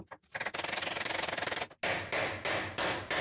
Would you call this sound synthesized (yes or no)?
no